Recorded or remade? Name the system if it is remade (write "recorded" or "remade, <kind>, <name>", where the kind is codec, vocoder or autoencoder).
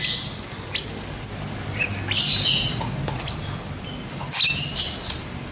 recorded